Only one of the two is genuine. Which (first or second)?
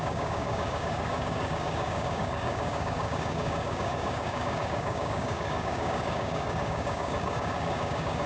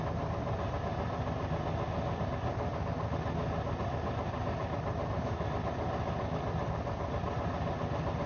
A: second